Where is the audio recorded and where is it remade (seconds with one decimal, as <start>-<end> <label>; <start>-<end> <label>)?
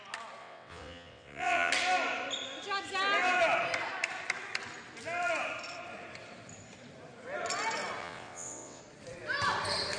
0.0-0.4 recorded; 0.4-1.7 remade; 1.7-8.0 recorded; 8.0-8.8 remade; 8.8-10.0 recorded